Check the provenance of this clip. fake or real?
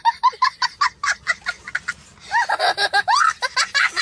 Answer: real